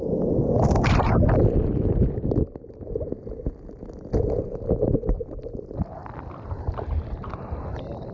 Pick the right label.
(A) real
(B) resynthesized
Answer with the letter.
A